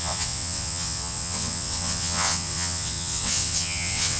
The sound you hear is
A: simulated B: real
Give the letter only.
A